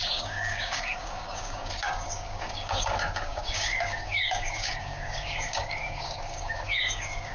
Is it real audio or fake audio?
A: fake